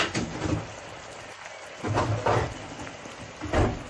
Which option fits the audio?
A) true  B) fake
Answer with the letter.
A